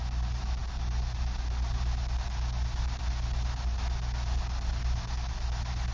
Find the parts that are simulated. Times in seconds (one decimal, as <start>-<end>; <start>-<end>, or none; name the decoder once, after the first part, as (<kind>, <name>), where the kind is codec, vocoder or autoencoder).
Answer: none